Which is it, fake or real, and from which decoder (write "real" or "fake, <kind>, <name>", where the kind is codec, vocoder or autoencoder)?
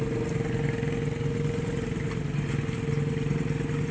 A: real